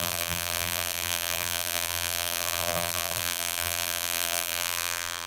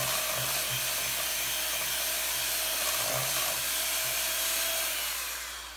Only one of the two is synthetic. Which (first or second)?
first